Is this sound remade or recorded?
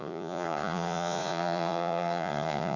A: remade